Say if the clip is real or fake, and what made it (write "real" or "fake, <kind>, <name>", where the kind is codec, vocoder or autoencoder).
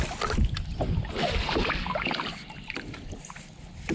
real